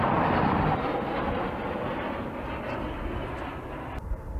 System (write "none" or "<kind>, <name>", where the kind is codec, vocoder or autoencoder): none